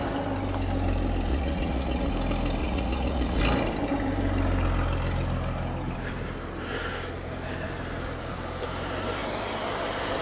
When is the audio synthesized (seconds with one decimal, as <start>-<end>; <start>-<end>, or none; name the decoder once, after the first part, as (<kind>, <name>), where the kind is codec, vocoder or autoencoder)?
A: 1.3-2.1 (vocoder, Vocos); 2.6-3.4